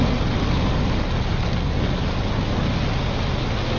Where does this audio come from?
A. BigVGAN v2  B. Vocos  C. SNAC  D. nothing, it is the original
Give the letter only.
D